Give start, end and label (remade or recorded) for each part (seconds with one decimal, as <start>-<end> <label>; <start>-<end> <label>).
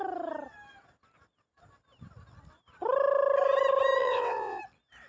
0.0-4.0 recorded; 4.0-4.6 remade; 4.6-5.1 recorded